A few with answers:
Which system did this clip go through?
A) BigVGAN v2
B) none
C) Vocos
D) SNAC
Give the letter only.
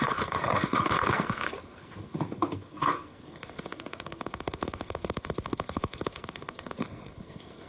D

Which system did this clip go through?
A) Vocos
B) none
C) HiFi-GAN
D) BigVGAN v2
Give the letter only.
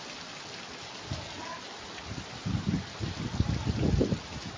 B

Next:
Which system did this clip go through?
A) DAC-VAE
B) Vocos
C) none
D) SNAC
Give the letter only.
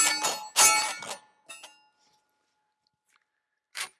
C